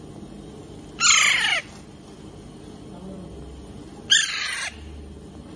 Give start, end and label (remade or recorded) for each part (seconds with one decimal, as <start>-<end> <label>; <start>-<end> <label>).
0.0-1.6 recorded; 1.6-2.2 remade; 2.2-5.6 recorded